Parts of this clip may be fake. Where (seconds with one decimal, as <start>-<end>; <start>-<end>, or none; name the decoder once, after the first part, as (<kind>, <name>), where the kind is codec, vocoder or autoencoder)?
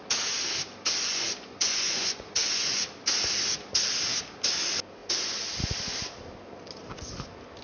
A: 1.1-2.8 (vocoder, Vocos)